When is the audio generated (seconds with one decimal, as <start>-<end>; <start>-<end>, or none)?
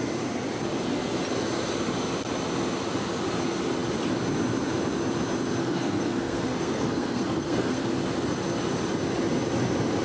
5.6-7.9